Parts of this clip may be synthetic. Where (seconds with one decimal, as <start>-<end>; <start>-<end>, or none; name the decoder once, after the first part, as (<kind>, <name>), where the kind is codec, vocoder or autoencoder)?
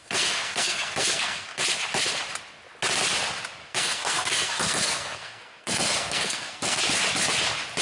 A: 0.0-1.6 (codec, SNAC); 3.6-6.8